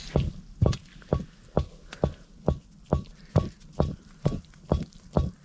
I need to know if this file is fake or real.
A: real